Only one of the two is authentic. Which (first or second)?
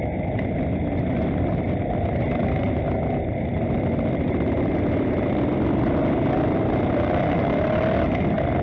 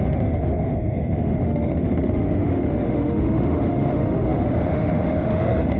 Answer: first